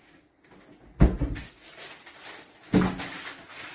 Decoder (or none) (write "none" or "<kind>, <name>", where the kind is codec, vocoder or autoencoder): none